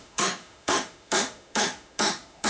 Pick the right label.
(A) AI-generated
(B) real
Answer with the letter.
A